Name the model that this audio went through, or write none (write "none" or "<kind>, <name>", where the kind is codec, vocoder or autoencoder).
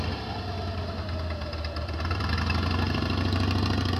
none